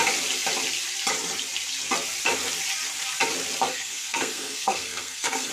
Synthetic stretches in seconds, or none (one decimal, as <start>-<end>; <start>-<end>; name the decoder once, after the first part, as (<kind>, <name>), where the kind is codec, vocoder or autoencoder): 3.7-5.5 (codec, SNAC)